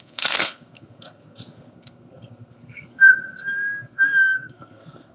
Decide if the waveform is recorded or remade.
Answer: remade